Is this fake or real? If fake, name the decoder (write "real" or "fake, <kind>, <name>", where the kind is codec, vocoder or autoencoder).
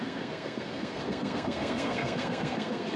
fake, codec, SNAC